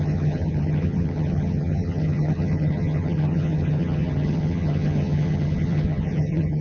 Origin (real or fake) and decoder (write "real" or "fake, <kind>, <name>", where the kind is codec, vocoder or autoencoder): fake, vocoder, HiFi-GAN